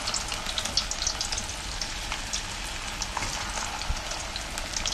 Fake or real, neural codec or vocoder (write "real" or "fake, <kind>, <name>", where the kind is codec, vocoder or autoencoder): real